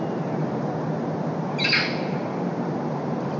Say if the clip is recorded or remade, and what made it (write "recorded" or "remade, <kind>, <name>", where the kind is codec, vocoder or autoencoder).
recorded